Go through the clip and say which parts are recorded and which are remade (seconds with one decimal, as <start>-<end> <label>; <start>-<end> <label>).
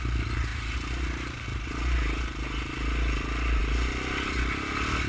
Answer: 0.0-5.1 recorded